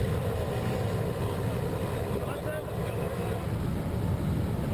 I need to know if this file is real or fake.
real